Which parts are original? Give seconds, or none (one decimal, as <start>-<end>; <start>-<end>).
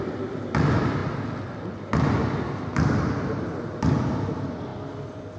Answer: 1.9-2.6